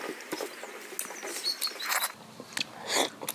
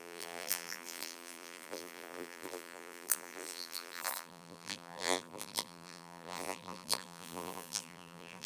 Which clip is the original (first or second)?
first